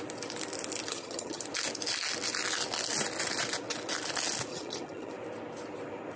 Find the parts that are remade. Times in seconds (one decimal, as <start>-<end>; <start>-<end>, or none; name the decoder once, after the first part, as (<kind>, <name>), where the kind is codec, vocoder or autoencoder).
0.9-1.4 (vocoder, HiFi-GAN); 4.5-5.1